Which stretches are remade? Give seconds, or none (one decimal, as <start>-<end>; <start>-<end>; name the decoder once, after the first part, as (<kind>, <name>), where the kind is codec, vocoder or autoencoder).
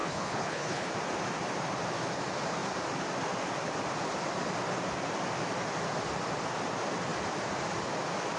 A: 0.0-0.9 (codec, HILCodec)